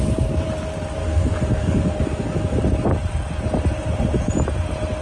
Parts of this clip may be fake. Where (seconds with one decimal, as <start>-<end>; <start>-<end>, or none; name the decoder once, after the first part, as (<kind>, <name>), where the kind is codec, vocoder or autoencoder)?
1.0-2.6 (codec, DAC)